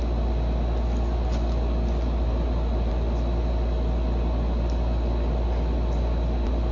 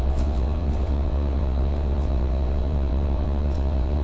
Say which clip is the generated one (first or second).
second